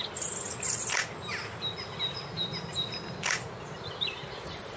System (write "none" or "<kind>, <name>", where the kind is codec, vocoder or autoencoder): none